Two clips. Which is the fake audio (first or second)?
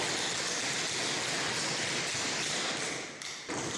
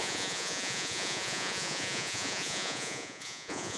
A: second